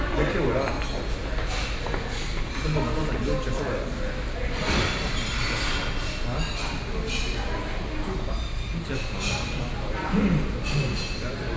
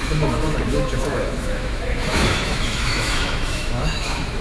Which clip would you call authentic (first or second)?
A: first